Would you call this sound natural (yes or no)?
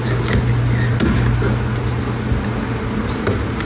yes